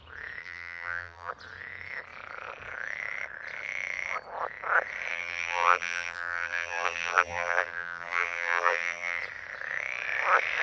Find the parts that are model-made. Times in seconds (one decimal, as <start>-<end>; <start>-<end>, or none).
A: 0.4-1.3; 5.1-9.2